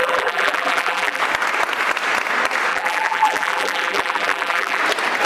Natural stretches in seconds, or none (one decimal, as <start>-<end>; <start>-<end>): 1.2-2.7; 4.8-5.3